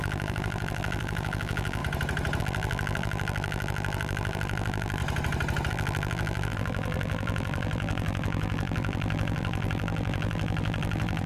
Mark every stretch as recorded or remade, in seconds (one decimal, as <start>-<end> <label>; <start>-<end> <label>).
0.0-1.8 remade; 1.8-2.4 recorded; 2.4-5.0 remade; 5.0-5.7 recorded; 5.7-11.3 remade